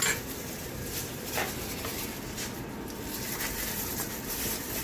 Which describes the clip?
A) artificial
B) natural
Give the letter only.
B